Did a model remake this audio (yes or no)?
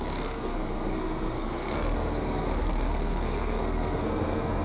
yes